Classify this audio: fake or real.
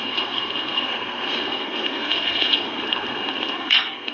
fake